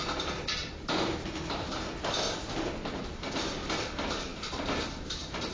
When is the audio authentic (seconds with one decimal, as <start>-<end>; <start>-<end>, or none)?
0.0-5.5